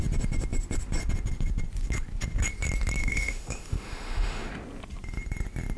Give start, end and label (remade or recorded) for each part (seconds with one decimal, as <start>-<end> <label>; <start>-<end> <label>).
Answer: 0.0-3.0 recorded; 3.0-4.5 remade; 4.5-5.8 recorded